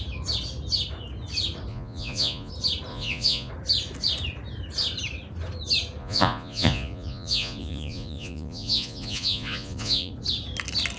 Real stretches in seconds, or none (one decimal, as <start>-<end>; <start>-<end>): 0.0-1.7; 2.5-2.9; 3.5-6.0; 10.1-11.0